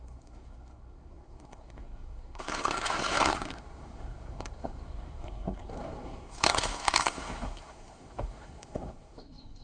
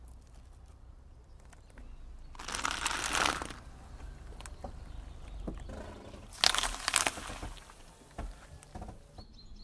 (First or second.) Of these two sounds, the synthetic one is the first